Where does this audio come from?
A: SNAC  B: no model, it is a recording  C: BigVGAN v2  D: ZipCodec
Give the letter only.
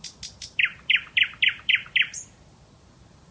B